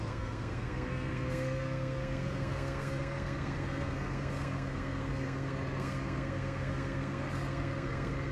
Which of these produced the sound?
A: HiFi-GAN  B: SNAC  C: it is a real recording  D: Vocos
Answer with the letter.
B